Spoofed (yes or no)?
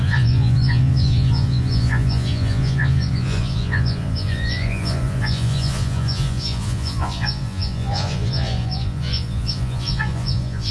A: yes